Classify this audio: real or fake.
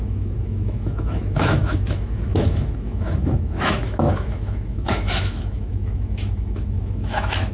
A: fake